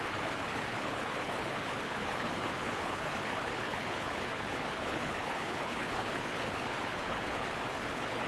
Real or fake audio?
fake